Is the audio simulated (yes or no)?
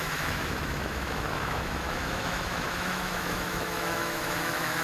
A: yes